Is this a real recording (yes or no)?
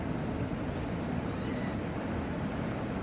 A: yes